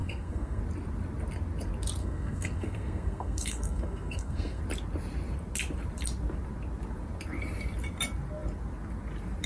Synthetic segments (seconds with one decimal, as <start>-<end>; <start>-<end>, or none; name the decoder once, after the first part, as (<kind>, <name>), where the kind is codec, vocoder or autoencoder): 0.0-0.6 (codec, SNAC); 2.0-4.6